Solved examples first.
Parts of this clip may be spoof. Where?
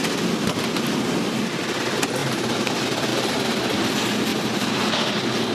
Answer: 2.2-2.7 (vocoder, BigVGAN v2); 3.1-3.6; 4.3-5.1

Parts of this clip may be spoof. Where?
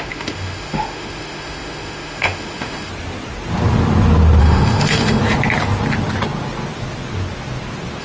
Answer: 0.0-2.9 (autoencoder, DAC-VAE); 4.4-5.2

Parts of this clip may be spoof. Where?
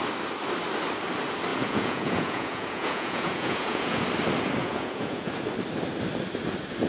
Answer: 1.5-4.0 (vocoder, Vocos); 4.6-5.3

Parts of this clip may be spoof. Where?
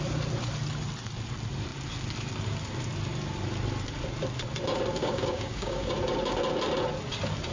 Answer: 5.0-5.9 (codec, DAC)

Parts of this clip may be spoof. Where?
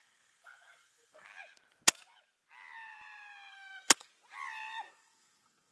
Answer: 0.0-1.3 (codec, SNAC); 3.5-4.1; 4.9-5.7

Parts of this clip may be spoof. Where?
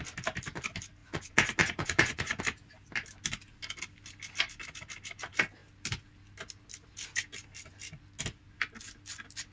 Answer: 1.0-2.4 (vocoder, Vocos)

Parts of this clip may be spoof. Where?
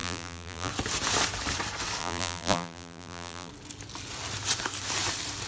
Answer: 0.0-0.7 (vocoder, BigVGAN v2); 2.0-3.5